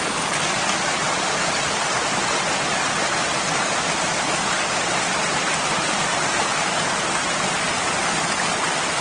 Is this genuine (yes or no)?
yes